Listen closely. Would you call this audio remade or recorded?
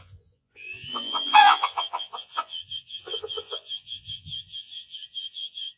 remade